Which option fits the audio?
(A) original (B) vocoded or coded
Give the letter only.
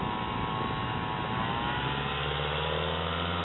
B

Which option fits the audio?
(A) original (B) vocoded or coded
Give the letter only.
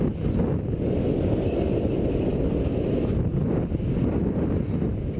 A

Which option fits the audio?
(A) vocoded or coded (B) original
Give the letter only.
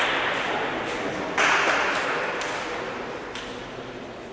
B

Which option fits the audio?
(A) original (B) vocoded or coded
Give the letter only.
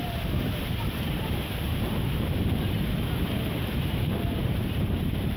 B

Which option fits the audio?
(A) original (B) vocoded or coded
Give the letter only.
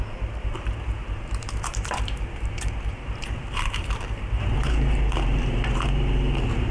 B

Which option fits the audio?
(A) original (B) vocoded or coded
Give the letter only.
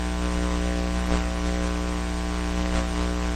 A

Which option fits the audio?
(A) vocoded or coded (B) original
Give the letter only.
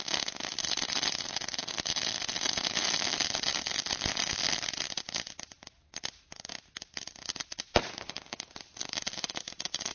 B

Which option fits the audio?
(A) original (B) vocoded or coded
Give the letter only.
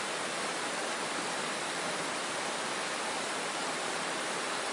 B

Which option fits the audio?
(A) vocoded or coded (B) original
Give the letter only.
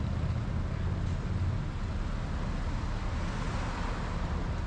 B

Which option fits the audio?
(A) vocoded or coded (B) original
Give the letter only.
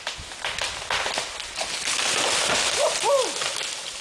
B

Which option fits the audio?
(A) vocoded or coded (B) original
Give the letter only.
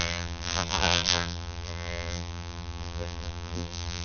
A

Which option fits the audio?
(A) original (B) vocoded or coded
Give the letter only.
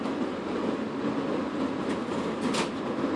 A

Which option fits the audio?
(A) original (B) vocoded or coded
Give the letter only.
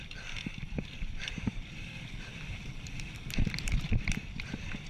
B